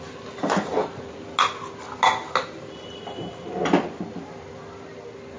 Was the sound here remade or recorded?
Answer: recorded